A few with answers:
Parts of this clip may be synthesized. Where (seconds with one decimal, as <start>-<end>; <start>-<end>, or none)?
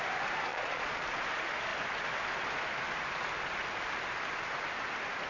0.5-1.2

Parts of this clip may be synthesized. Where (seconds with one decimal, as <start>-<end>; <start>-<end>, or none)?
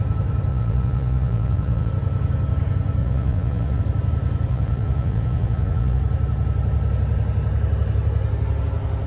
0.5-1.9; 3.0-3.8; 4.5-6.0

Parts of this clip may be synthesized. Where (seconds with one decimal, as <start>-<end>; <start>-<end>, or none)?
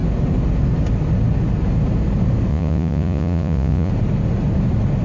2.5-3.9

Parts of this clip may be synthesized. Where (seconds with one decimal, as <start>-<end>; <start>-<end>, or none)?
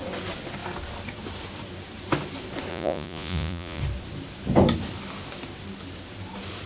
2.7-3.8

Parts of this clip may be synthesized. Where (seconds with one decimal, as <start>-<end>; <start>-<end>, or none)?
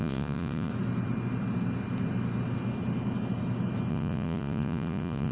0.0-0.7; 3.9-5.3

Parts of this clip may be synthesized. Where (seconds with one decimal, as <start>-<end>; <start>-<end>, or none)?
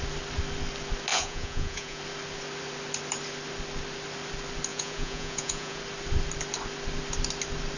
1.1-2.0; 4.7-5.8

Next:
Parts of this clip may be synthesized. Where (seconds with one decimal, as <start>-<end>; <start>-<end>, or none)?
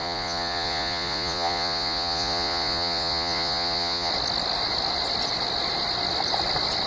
0.0-4.1